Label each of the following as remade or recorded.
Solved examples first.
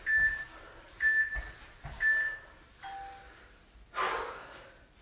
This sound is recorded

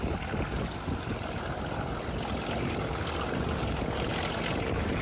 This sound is recorded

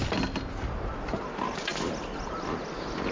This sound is recorded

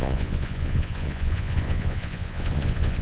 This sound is remade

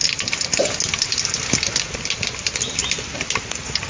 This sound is recorded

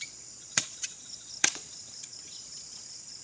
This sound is remade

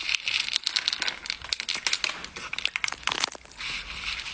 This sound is recorded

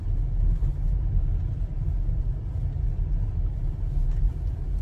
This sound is recorded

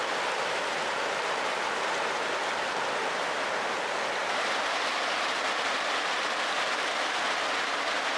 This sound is recorded